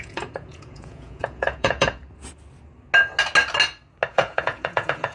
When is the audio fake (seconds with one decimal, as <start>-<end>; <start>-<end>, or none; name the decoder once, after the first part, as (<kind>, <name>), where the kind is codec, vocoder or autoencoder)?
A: 0.0-2.0 (vocoder, Vocos); 4.1-5.1